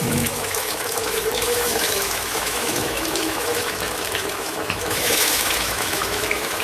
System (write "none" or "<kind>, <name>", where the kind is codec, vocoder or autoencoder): autoencoder, DAC-VAE